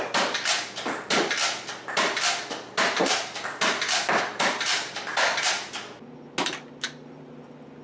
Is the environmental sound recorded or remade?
recorded